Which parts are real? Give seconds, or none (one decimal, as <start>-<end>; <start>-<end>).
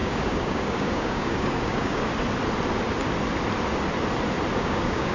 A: 2.1-4.6